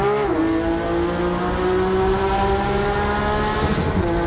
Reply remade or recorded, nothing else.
recorded